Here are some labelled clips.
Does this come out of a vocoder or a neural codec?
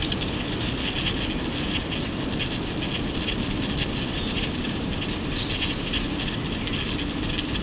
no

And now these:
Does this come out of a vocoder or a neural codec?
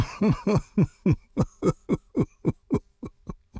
no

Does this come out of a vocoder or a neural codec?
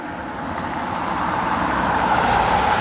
yes